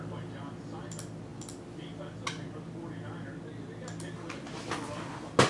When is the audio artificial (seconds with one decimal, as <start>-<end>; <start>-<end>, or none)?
none